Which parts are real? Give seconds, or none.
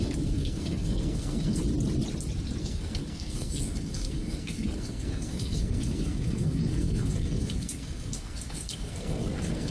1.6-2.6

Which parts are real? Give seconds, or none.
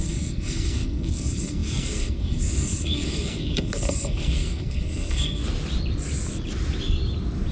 5.4-7.5